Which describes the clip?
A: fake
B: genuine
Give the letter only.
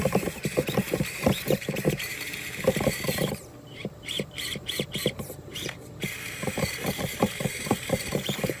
A